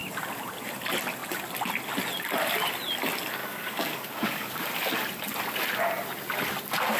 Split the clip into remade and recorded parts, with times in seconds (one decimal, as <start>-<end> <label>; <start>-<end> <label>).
0.0-3.4 recorded; 3.4-4.7 remade; 4.7-7.0 recorded